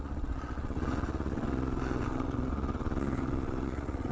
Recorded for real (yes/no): no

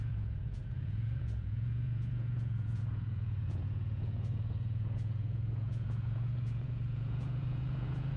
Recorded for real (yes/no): no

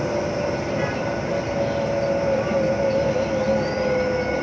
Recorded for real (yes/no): yes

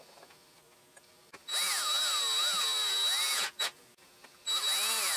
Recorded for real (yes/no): yes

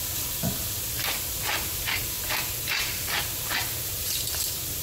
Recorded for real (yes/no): yes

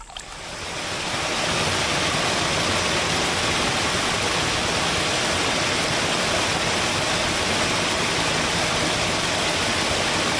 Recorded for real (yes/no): yes